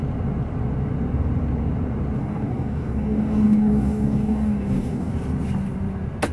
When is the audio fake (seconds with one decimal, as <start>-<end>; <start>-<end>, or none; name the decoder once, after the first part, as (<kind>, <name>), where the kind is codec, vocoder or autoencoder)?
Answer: 2.2-5.1 (codec, DAC)